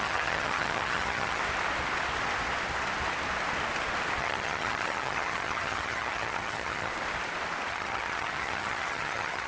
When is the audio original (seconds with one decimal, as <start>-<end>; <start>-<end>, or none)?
1.4-4.2; 6.9-7.7